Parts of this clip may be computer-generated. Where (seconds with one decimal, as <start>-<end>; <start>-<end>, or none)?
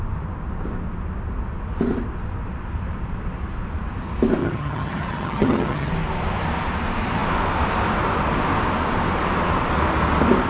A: 4.4-5.9